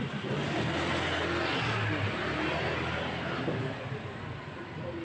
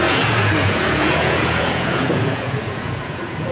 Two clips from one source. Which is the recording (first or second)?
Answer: first